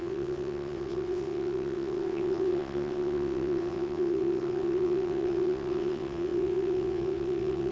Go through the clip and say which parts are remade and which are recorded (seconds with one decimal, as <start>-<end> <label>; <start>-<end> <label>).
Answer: 0.0-7.7 remade